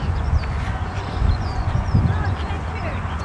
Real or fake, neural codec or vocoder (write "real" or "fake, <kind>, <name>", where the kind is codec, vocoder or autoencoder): fake, vocoder, Vocos